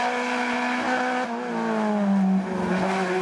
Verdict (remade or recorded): recorded